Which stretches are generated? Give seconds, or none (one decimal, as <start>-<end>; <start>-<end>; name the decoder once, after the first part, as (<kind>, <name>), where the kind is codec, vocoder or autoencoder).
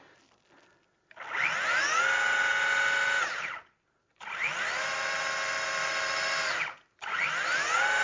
none